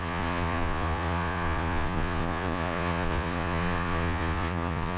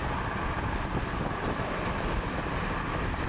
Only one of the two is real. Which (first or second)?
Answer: second